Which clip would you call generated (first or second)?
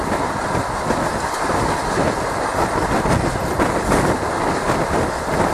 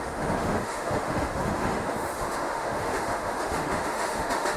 second